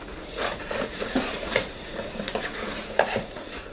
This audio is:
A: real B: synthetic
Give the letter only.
B